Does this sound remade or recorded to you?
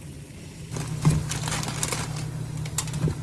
recorded